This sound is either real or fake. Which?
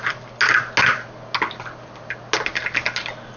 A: real